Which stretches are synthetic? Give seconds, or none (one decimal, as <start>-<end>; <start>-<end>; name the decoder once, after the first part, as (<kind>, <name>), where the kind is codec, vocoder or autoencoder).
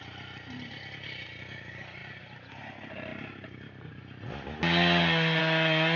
none